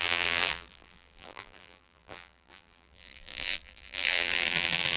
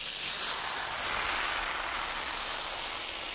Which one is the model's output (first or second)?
first